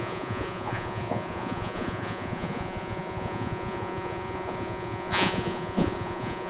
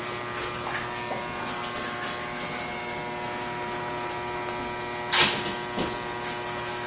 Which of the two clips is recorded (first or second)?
second